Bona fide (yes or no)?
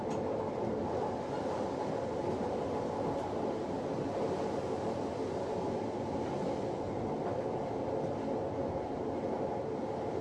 yes